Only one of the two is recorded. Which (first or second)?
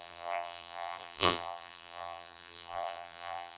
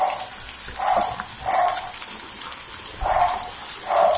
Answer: second